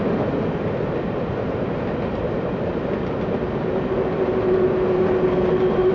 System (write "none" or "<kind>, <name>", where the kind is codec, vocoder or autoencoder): none